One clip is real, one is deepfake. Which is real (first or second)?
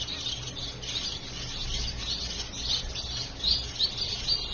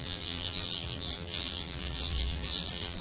first